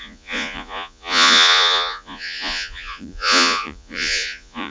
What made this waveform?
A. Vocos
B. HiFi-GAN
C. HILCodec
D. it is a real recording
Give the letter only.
A